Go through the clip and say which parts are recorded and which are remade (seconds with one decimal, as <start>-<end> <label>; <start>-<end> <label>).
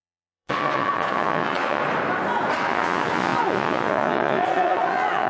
0.0-1.8 remade; 1.8-2.6 recorded; 2.6-5.3 remade